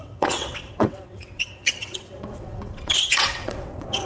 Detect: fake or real fake